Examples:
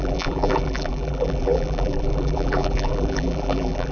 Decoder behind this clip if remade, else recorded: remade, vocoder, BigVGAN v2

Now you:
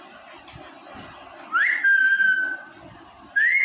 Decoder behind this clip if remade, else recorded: recorded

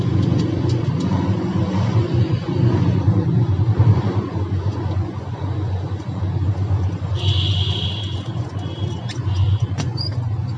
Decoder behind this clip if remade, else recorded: remade, vocoder, Vocos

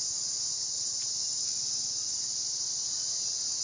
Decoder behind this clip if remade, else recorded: recorded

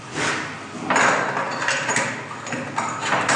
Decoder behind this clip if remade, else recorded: recorded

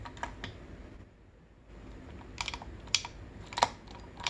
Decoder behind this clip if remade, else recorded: recorded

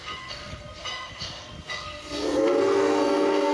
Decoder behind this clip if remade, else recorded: remade, codec, SNAC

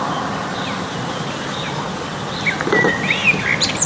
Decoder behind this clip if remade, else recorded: recorded